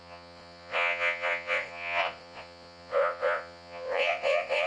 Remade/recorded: remade